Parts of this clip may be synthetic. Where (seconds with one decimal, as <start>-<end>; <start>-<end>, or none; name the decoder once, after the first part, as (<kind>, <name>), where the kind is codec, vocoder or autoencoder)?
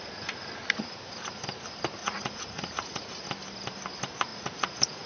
2.0-3.2 (vocoder, Vocos); 4.3-5.1